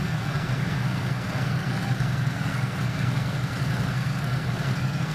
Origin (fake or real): fake